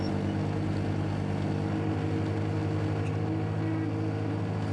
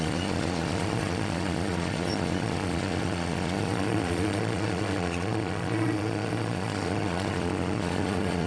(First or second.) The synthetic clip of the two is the second